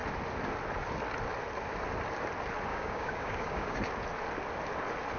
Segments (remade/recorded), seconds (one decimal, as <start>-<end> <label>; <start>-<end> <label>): 0.0-2.7 recorded; 2.7-3.8 remade; 3.8-5.2 recorded